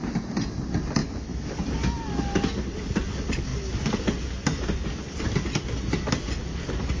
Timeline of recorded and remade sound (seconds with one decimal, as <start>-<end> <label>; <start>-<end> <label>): 0.0-1.0 recorded; 1.0-1.5 remade; 1.5-7.0 recorded